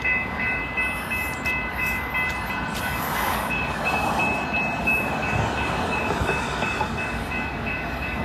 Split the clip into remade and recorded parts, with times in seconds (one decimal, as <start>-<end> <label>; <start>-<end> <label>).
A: 0.0-0.6 remade; 0.6-1.7 recorded; 1.7-2.1 remade; 2.1-2.8 recorded; 2.8-4.2 remade; 4.2-4.8 recorded; 4.8-8.2 remade